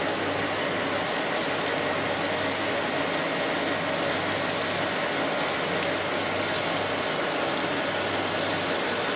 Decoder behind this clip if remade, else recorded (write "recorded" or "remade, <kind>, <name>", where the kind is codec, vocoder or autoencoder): recorded